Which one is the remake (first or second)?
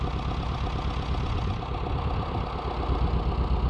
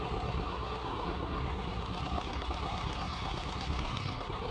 second